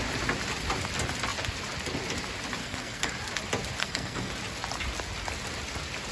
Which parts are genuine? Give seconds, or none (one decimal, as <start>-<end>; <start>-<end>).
0.0-2.6; 3.1-3.8; 4.3-6.1